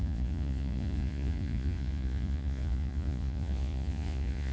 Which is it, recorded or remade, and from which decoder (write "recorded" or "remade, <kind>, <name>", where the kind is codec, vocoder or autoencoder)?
remade, vocoder, Vocos